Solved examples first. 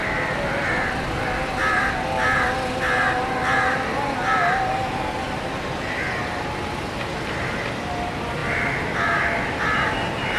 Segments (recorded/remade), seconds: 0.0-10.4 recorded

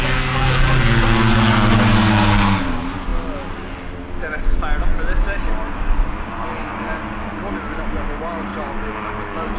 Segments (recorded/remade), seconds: 0.0-9.6 recorded